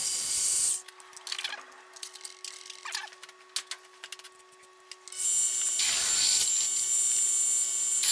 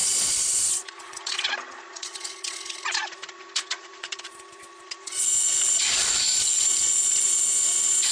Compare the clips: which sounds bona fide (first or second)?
first